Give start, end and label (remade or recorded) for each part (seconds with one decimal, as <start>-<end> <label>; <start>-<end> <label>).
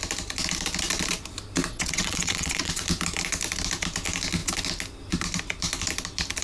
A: 0.0-1.7 recorded; 1.7-2.8 remade; 2.8-6.4 recorded